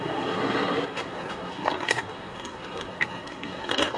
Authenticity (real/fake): fake